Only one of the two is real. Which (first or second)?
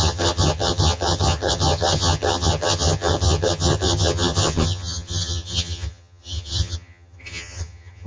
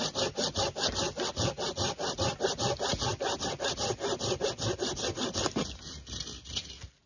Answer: second